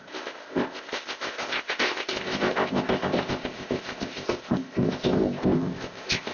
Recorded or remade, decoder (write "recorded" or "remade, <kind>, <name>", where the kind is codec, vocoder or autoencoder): remade, codec, ZipCodec